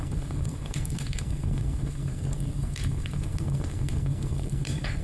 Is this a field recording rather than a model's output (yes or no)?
no